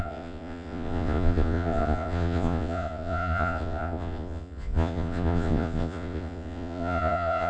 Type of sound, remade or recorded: remade